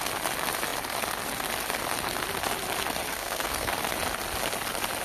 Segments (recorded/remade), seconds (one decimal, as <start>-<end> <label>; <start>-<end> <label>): 0.0-3.1 recorded; 3.1-3.7 remade; 3.7-5.0 recorded